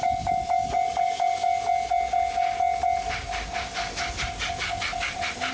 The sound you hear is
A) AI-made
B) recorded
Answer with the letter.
B